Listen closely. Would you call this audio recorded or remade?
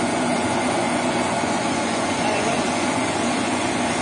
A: remade